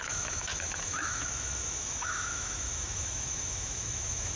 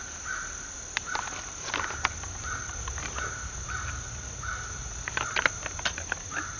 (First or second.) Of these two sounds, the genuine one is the second